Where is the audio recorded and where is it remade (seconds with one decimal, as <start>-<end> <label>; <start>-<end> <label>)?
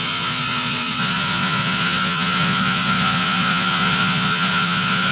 0.0-5.1 remade